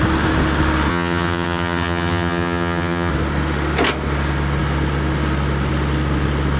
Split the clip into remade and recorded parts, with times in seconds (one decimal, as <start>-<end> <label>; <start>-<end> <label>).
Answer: 0.0-0.9 recorded; 0.9-3.1 remade; 3.1-6.6 recorded